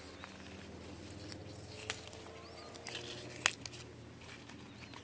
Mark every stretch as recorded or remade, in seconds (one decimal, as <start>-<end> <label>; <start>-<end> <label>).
0.0-5.0 recorded

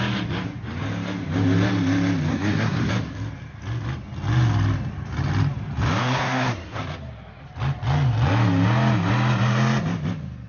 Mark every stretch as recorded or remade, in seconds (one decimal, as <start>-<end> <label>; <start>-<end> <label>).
0.0-2.3 recorded; 2.3-2.9 remade; 2.9-6.0 recorded; 6.0-6.8 remade; 6.8-10.5 recorded